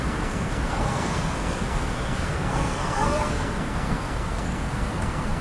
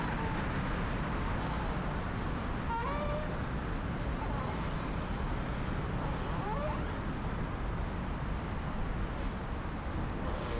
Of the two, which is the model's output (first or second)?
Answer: first